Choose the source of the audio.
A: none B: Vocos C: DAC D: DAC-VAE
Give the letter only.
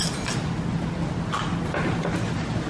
A